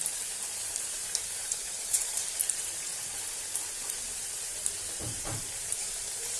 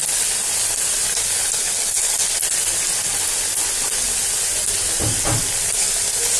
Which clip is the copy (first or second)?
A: first